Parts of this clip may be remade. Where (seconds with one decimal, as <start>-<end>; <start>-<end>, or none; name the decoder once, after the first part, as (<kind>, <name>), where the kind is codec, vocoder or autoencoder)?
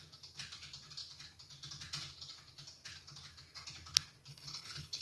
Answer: 4.3-5.0 (codec, HILCodec)